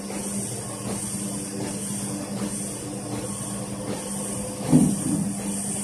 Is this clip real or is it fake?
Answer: real